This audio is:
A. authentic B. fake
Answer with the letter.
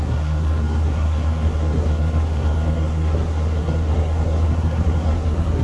B